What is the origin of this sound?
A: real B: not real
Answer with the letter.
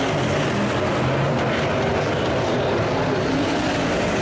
A